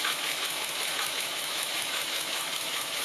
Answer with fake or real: fake